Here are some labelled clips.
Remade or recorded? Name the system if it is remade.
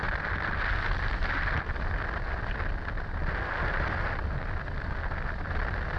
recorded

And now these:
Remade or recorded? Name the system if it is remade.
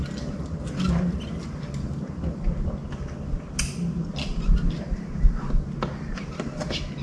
recorded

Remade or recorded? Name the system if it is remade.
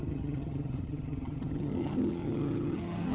remade, vocoder, HiFi-GAN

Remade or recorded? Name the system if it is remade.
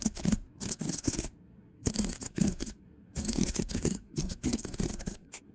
remade, codec, SNAC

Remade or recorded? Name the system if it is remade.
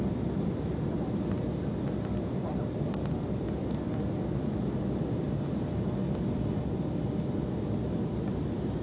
recorded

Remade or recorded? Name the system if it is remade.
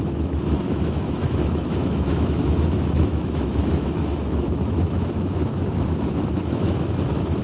remade, autoencoder, DAC-VAE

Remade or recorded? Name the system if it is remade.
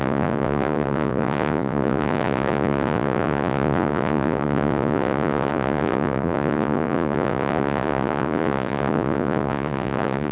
remade, vocoder, Vocos